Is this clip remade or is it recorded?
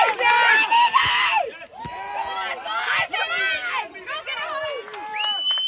recorded